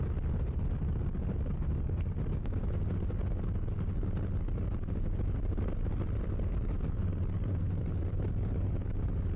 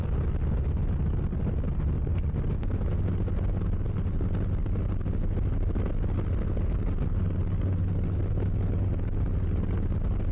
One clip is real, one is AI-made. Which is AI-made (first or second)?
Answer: first